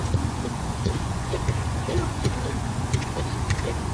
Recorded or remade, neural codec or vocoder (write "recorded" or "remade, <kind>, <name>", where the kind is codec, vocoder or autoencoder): remade, vocoder, Vocos